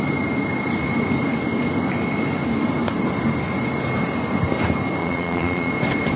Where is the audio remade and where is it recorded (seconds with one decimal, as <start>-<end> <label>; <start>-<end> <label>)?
0.0-5.0 recorded; 5.0-5.7 remade; 5.7-6.2 recorded